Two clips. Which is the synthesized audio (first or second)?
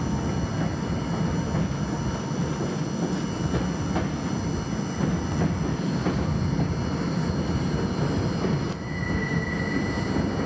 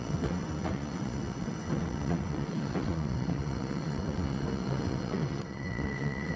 second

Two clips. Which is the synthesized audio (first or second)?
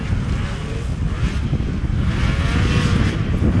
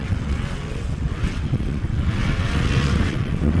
second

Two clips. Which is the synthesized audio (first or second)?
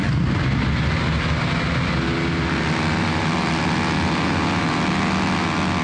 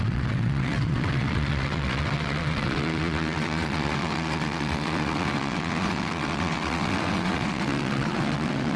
second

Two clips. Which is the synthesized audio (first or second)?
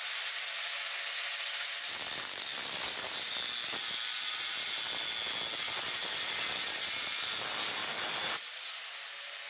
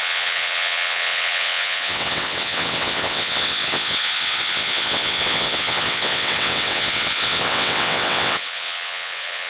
second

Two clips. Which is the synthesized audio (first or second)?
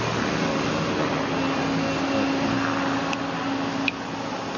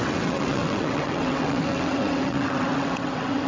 second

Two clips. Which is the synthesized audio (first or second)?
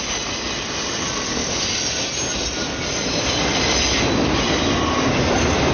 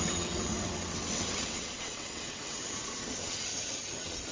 second